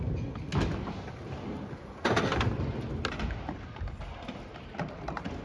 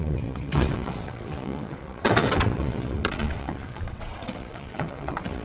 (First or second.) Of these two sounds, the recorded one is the first